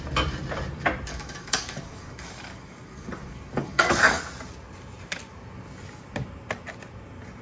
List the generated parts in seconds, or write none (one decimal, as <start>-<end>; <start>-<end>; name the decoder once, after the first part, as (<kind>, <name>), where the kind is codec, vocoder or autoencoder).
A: 1.1-4.2 (codec, DAC)